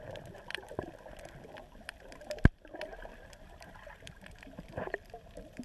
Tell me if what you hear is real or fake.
fake